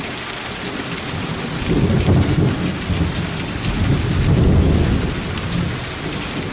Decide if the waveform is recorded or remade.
recorded